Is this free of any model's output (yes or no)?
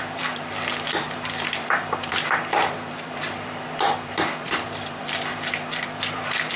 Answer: no